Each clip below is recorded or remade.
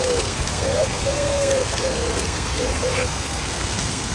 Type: remade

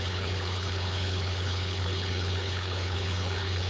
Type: remade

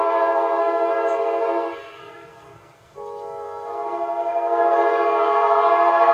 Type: remade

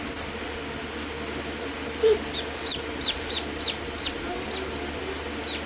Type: recorded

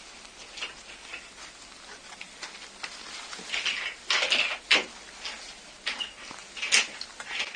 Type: recorded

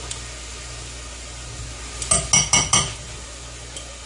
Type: recorded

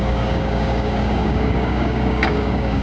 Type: remade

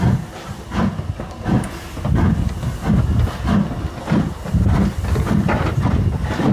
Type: recorded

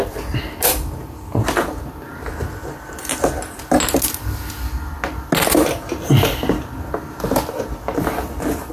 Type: recorded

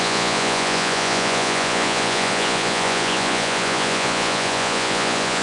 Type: remade